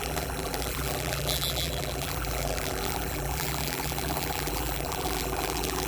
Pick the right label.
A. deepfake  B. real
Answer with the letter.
A